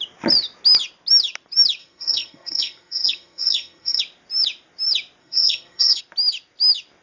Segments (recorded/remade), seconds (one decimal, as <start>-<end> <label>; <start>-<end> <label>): 0.0-1.8 recorded; 1.8-4.0 remade; 4.0-5.2 recorded; 5.2-6.0 remade; 6.0-7.0 recorded